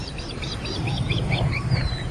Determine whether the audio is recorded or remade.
recorded